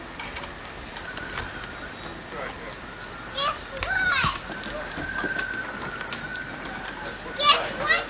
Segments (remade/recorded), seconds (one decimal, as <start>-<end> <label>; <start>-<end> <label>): 0.0-8.1 recorded